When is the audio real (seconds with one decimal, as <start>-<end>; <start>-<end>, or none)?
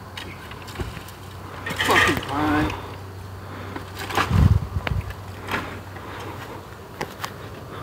0.0-7.8